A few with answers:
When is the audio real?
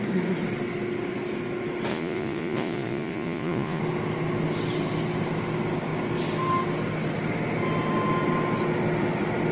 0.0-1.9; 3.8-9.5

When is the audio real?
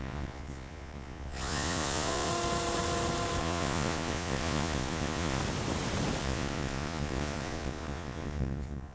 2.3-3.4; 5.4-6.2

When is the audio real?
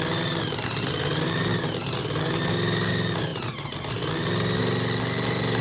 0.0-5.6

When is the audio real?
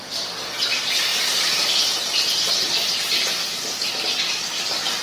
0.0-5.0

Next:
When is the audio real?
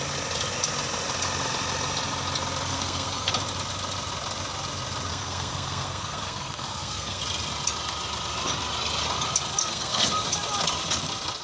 0.0-2.7; 3.3-5.1; 7.2-9.6; 10.1-11.4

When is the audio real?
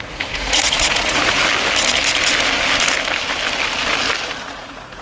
1.4-4.4